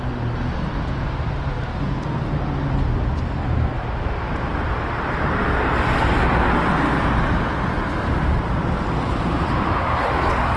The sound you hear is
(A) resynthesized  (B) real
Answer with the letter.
B